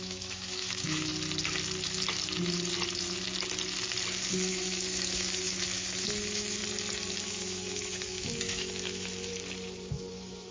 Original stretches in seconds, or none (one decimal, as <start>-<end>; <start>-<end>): 1.1-4.5; 6.6-7.3; 9.3-10.1

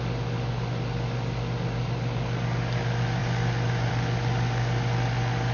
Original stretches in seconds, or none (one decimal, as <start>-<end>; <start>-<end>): 0.0-5.5

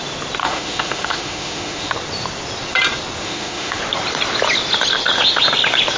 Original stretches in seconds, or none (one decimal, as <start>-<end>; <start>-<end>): 0.0-0.4; 1.9-3.2; 3.8-6.0

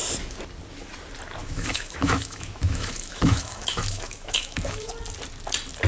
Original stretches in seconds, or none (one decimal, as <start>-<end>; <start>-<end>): 0.0-1.4; 4.9-5.9